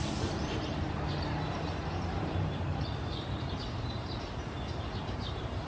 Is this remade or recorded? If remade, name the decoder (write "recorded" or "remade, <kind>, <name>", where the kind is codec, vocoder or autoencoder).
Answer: remade, vocoder, BigVGAN v2